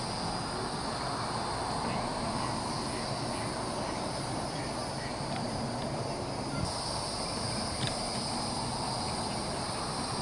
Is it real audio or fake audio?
real